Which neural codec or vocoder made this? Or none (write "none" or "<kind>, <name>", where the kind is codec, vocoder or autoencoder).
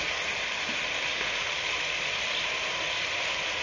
none